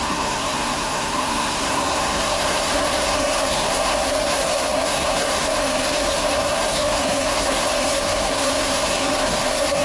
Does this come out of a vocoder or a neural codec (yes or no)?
yes